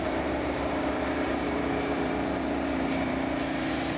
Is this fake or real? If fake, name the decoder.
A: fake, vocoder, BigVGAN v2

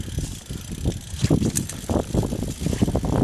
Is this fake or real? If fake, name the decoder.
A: real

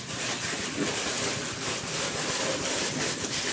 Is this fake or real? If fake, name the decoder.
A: real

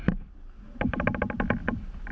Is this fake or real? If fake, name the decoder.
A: real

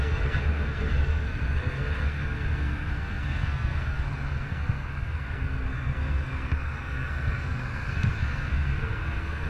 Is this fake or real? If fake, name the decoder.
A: fake, codec, SNAC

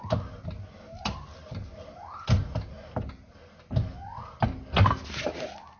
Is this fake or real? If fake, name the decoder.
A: real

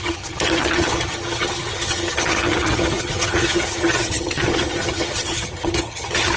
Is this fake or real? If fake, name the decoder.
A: fake, vocoder, HiFi-GAN